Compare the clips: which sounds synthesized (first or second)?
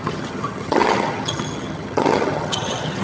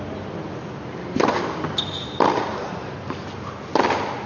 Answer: first